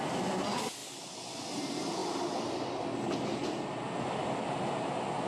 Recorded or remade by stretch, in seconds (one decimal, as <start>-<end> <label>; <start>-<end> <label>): 0.0-5.3 recorded